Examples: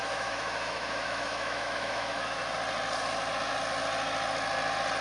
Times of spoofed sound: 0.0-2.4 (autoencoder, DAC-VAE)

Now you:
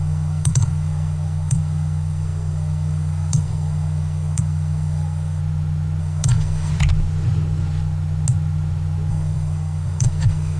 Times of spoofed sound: 0.0-5.4 (codec, SNAC); 6.0-6.7; 9.1-10.6

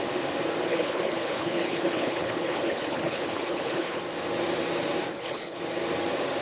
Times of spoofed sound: 0.7-4.0 (codec, HILCodec); 5.1-5.6

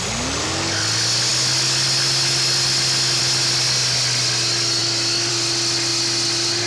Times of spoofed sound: none

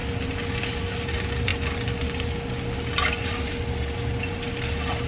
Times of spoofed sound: none

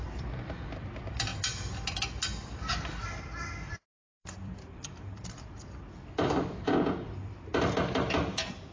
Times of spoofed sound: 0.0-1.3 (vocoder, BigVGAN v2); 3.7-7.5; 8.2-8.7